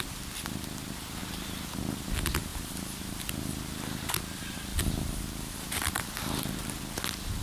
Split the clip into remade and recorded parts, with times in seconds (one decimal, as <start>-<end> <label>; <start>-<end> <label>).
0.0-1.2 recorded; 1.2-1.8 remade; 1.8-2.5 recorded; 2.5-4.1 remade; 4.1-4.7 recorded; 4.7-6.6 remade; 6.6-7.4 recorded